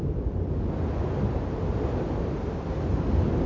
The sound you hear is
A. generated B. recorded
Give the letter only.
B